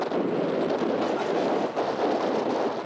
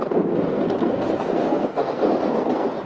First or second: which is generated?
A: second